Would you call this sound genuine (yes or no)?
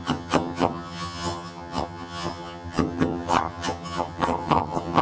no